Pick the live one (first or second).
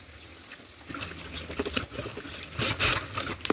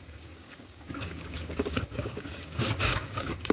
first